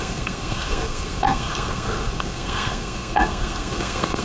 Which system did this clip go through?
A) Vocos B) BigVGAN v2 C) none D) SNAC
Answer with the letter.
D